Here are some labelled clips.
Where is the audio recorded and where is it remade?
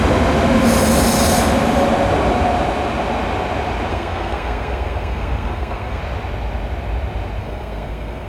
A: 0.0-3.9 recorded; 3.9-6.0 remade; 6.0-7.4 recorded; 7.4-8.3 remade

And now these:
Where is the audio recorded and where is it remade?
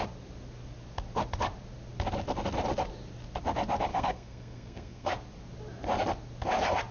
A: 0.0-3.9 recorded; 3.9-5.1 remade; 5.1-6.9 recorded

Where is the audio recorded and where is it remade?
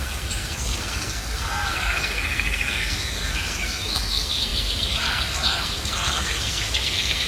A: 0.0-7.3 remade